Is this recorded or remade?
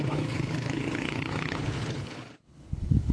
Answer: remade